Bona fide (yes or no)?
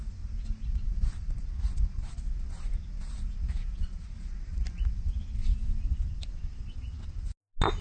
yes